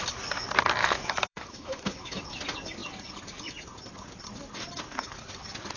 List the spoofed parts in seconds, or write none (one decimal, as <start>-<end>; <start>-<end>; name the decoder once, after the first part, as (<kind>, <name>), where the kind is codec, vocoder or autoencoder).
0.8-2.2 (autoencoder, DAC-VAE)